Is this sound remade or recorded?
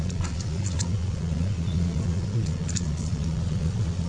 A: remade